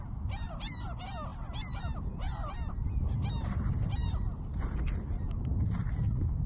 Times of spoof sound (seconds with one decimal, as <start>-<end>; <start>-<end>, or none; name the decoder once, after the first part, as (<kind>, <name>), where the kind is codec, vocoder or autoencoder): none